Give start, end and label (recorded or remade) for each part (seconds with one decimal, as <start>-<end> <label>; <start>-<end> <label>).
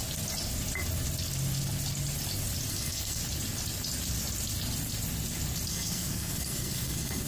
0.0-2.7 recorded; 2.7-3.2 remade; 3.2-5.7 recorded; 5.7-7.3 remade